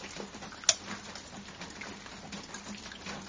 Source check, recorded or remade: recorded